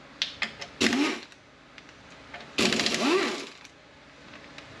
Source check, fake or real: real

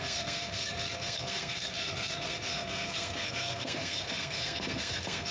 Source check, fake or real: fake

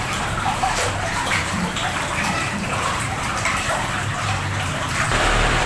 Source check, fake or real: fake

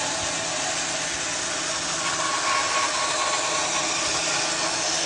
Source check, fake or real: real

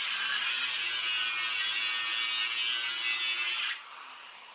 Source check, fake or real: real